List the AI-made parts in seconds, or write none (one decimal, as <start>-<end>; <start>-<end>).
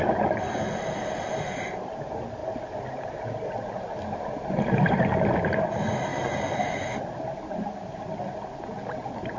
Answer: none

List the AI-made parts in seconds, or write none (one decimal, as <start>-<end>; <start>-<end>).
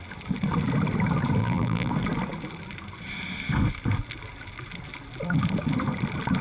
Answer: 1.4-1.9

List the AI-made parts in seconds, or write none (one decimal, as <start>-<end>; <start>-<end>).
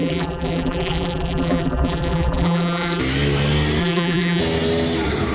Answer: 0.0-3.0; 3.8-4.4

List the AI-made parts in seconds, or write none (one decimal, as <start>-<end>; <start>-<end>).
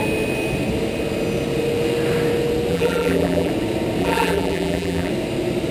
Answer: 2.7-3.5; 4.0-5.1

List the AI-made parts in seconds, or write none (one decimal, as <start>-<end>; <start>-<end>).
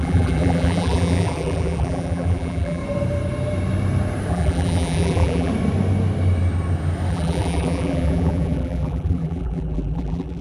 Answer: 0.0-2.8; 4.3-5.5; 7.1-10.4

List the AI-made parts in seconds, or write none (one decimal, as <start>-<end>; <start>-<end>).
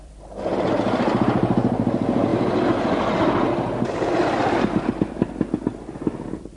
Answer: 0.0-6.6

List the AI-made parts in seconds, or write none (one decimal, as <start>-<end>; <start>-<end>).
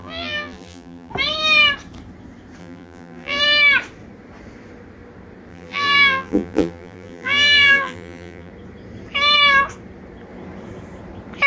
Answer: 0.0-1.1; 2.6-3.4; 5.5-8.5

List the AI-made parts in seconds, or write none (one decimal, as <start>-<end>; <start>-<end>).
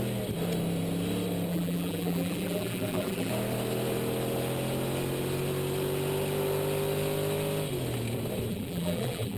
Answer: 1.5-3.3; 8.5-9.4